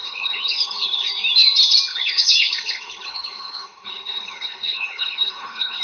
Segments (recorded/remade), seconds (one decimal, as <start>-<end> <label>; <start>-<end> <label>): 0.0-1.1 remade; 1.1-1.9 recorded; 1.9-5.8 remade